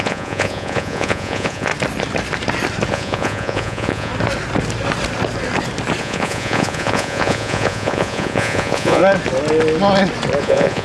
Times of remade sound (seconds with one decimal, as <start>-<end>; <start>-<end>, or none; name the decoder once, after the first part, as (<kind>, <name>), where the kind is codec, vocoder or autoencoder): 0.0-1.7 (vocoder, Vocos); 2.9-4.1; 6.0-9.0; 10.4-10.8